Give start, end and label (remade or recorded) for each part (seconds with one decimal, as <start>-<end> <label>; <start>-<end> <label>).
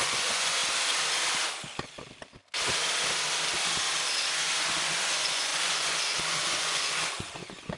0.0-0.6 remade; 0.6-4.3 recorded; 4.3-7.8 remade